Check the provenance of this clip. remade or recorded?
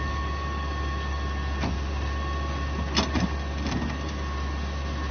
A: recorded